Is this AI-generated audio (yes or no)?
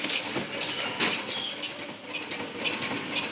no